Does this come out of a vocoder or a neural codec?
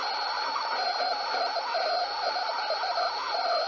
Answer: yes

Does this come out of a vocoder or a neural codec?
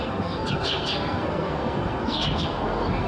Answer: yes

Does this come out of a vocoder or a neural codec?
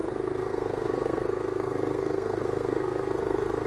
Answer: yes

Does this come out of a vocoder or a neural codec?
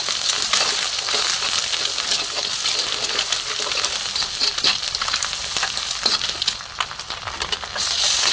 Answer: no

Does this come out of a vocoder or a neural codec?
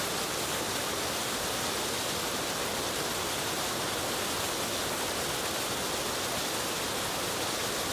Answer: no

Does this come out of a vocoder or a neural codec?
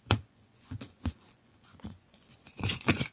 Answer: yes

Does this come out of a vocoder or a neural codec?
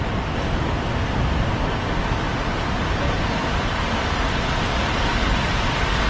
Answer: no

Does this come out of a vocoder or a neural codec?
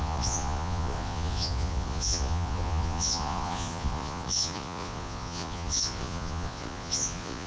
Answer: yes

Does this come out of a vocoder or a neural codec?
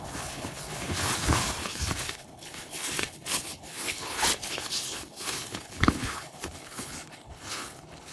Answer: yes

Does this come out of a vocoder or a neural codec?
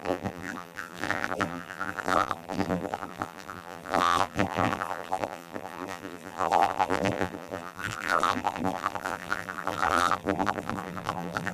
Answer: yes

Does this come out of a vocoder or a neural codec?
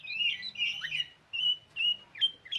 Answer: no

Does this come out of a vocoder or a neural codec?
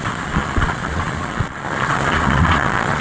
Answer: yes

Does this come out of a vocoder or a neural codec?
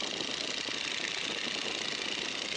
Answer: no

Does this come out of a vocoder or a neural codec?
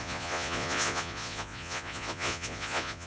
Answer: yes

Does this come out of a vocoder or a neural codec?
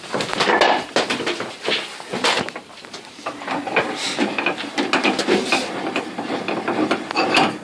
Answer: no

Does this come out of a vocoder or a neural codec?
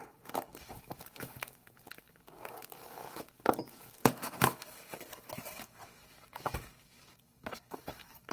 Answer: yes